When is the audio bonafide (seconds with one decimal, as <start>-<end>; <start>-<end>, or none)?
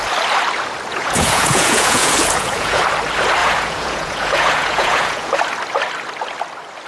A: 0.0-0.9; 2.8-3.4; 5.4-6.9